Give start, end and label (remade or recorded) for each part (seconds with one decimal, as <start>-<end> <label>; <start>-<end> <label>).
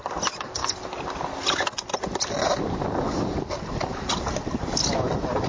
0.0-5.5 recorded